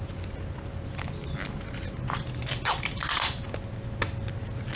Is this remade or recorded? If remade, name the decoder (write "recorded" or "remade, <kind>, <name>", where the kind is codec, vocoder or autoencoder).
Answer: recorded